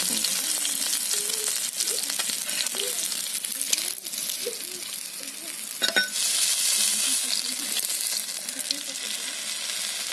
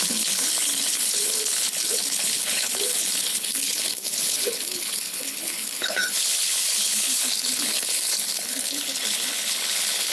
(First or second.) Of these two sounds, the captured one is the first